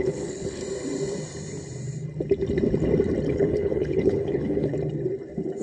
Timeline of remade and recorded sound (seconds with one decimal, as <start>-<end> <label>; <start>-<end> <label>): 0.0-0.6 remade; 0.6-3.3 recorded; 3.3-4.7 remade; 4.7-5.6 recorded